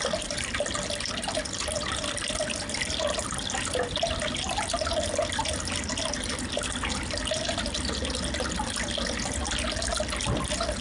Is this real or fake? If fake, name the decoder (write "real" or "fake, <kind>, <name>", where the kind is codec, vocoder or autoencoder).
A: real